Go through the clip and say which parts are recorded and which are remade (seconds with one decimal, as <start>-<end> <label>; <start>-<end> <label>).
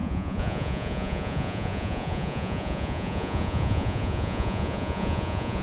0.0-5.6 remade